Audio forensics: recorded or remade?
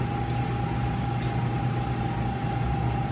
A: recorded